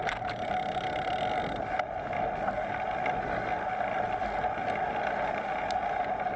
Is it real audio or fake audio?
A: real